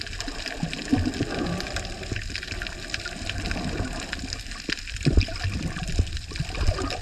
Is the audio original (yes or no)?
yes